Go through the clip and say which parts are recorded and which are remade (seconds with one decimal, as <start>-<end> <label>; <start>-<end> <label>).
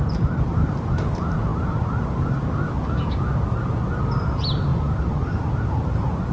0.0-6.3 recorded